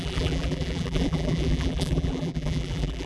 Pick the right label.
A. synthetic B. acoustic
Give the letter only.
A